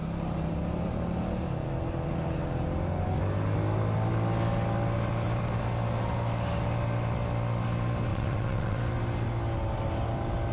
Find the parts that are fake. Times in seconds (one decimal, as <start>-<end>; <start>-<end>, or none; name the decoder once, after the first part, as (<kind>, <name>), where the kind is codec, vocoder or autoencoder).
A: 8.1-8.8 (vocoder, WaveNeXt)